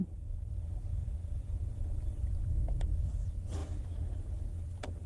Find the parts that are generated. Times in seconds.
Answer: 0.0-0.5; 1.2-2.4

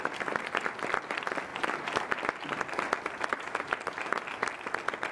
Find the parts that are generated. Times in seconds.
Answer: none

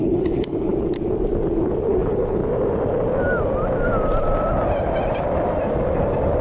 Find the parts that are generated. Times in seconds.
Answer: 0.0-0.7; 1.9-2.4

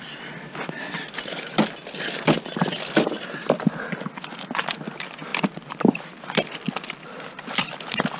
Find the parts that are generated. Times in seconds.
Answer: 5.3-8.2

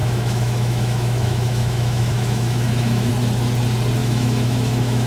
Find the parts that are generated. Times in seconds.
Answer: 0.0-3.1; 4.0-5.1

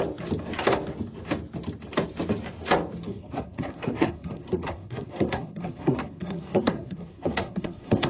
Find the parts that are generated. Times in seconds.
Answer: 3.1-8.1